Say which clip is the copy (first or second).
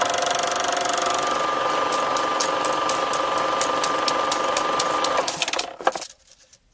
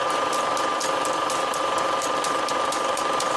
second